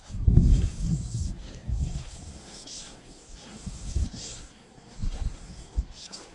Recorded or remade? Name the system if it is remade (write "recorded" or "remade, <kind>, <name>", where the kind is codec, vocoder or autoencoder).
remade, codec, SNAC